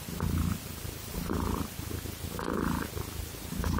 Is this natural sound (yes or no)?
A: yes